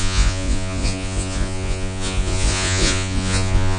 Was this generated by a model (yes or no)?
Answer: yes